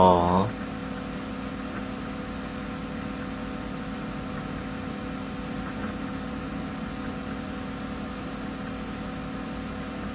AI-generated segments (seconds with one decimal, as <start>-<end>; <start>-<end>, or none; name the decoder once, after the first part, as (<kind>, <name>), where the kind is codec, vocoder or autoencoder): none